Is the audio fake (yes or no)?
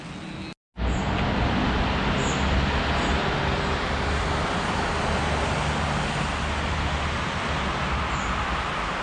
no